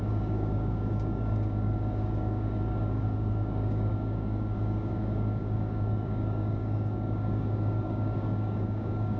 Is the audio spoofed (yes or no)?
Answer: yes